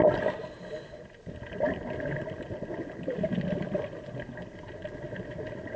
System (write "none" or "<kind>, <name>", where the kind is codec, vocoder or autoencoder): none